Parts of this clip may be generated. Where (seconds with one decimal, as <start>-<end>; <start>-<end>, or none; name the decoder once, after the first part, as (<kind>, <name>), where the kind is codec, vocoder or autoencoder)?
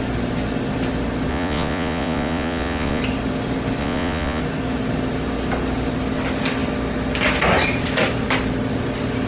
1.3-3.0 (vocoder, Vocos); 3.8-4.4